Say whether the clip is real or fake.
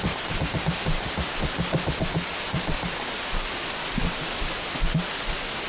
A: real